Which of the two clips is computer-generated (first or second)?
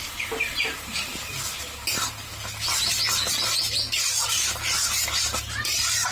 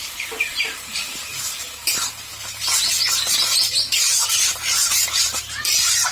second